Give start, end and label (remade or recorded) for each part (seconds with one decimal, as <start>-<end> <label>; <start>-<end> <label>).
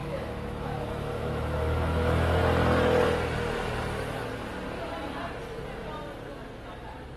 0.0-2.4 remade; 2.4-7.2 recorded